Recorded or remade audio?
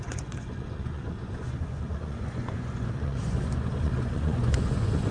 remade